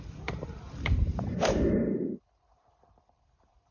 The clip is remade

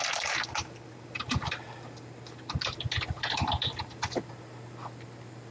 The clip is recorded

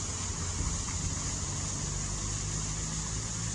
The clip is recorded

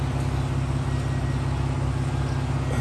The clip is recorded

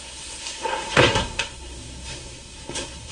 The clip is remade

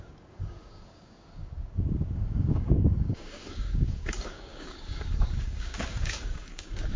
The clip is remade